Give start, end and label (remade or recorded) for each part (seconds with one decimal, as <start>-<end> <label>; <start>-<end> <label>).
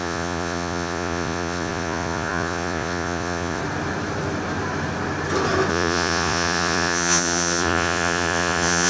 0.0-3.6 remade; 3.6-5.7 recorded; 5.7-8.9 remade